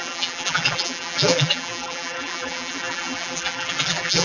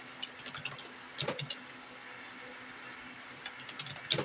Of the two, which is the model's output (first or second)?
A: first